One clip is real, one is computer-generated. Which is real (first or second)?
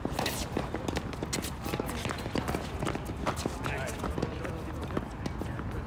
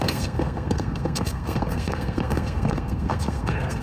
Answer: first